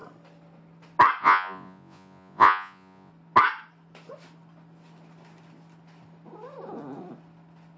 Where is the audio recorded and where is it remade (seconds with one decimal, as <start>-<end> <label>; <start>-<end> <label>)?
0.0-1.2 recorded; 1.2-3.1 remade; 3.1-7.8 recorded